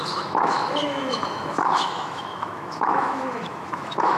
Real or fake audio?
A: fake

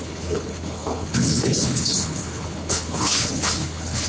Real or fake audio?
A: fake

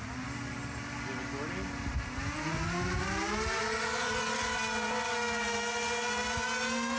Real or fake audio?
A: real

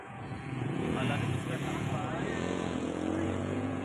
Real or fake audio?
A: fake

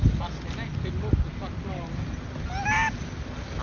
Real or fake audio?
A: real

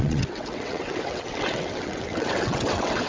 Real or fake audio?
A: fake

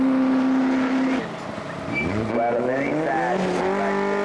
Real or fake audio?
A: real